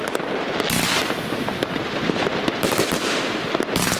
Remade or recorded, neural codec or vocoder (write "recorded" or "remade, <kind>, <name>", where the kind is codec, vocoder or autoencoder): recorded